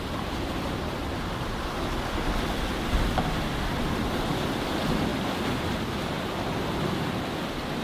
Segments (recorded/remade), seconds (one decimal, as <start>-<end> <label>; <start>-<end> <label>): 0.0-7.8 recorded